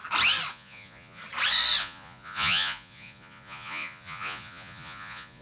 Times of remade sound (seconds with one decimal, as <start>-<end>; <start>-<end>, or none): 0.5-1.2; 1.8-5.4